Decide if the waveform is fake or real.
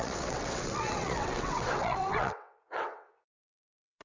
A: fake